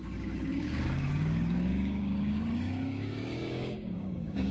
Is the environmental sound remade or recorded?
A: remade